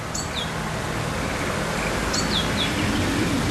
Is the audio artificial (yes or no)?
no